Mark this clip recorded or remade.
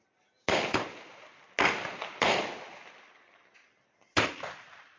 recorded